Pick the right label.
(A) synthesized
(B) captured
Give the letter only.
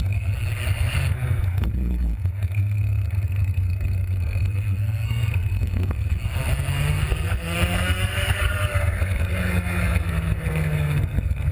A